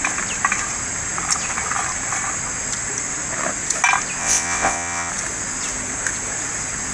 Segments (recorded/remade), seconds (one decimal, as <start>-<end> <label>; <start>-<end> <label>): 0.0-4.2 recorded; 4.2-5.1 remade; 5.1-6.9 recorded